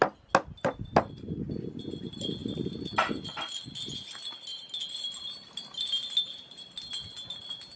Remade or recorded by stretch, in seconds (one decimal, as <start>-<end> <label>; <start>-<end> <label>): 0.0-7.8 recorded